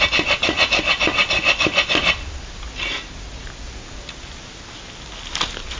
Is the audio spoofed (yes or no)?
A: no